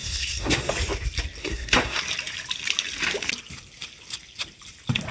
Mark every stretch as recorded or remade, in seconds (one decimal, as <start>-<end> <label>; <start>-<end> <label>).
0.0-0.7 remade; 0.7-1.4 recorded; 1.4-2.0 remade; 2.0-5.1 recorded